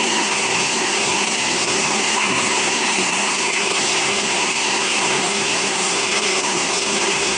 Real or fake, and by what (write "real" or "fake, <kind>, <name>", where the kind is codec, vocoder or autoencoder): fake, codec, SNAC